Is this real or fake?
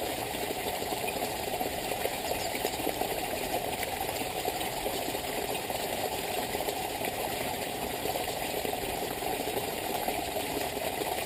fake